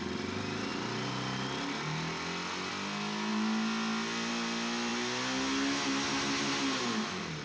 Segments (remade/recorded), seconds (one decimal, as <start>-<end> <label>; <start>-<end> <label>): 0.0-7.4 recorded